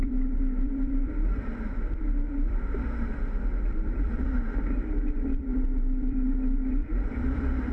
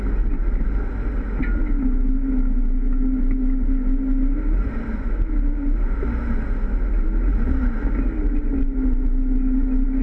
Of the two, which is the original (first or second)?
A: second